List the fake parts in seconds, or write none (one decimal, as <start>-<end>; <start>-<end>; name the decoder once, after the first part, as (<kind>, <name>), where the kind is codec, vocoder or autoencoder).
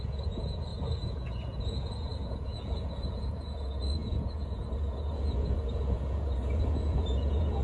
0.0-7.6 (vocoder, Vocos)